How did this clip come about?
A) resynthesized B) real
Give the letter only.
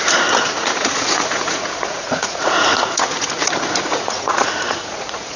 A